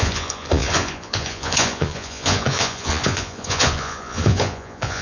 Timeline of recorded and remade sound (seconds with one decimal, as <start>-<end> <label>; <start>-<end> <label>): 0.0-5.0 remade